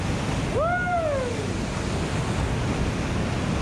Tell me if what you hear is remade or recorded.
recorded